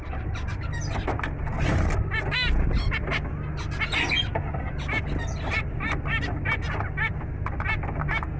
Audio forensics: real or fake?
real